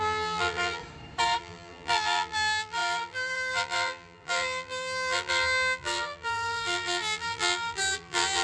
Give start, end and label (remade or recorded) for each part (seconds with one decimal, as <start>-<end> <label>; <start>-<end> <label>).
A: 0.0-0.8 remade; 0.8-1.4 recorded; 1.4-8.4 remade

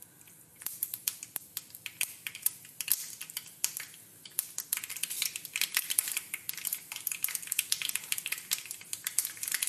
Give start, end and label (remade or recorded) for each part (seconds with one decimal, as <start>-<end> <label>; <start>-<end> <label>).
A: 0.0-0.5 recorded; 0.5-1.2 remade; 1.2-9.7 recorded

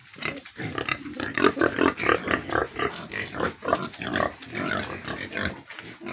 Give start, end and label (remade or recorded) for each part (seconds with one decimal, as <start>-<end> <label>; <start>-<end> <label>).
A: 0.0-0.6 remade; 0.6-2.6 recorded; 2.6-3.8 remade; 3.8-6.1 recorded

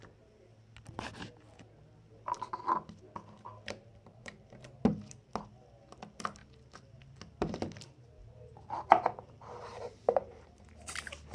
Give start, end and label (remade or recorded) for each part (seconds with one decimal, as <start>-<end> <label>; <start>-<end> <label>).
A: 0.0-3.9 recorded; 3.9-4.8 remade; 4.8-9.7 recorded; 9.7-10.9 remade; 10.9-11.3 recorded

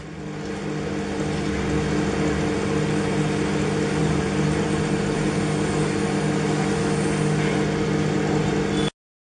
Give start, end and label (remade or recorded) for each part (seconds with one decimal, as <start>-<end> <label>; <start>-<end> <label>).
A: 0.0-4.0 recorded; 4.0-5.4 remade; 5.4-9.4 recorded

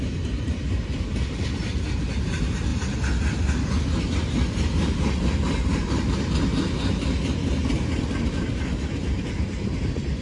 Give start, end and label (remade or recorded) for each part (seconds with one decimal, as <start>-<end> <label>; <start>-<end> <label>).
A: 0.0-2.7 remade; 2.7-4.1 recorded; 4.1-10.2 remade

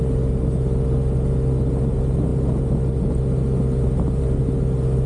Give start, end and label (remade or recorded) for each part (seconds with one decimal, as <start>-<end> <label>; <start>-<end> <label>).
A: 0.0-5.1 recorded

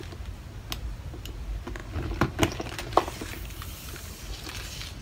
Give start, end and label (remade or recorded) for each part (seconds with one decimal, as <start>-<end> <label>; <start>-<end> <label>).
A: 0.0-1.8 recorded; 1.8-4.5 remade; 4.5-5.0 recorded